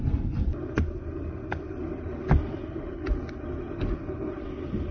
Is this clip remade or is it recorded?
recorded